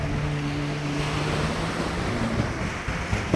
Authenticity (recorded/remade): recorded